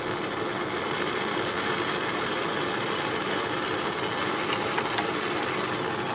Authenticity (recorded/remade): recorded